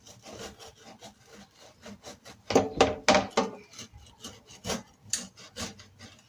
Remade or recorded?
recorded